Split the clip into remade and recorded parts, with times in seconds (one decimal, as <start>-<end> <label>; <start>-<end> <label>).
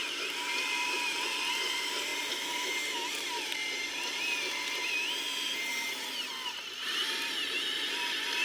0.0-5.7 remade; 5.7-6.8 recorded; 6.8-8.4 remade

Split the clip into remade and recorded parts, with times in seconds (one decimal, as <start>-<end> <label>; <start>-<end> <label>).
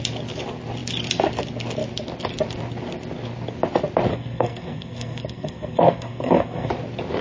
0.0-4.1 recorded; 4.1-6.7 remade; 6.7-7.2 recorded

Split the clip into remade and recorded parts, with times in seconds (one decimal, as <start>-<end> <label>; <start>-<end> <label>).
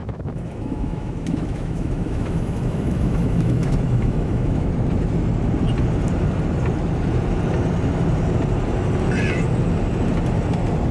0.0-4.7 remade; 4.7-10.9 recorded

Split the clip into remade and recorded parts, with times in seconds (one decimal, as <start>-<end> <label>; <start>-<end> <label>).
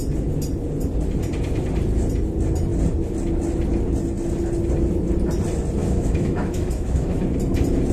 0.0-5.8 recorded; 5.8-7.2 remade; 7.2-7.9 recorded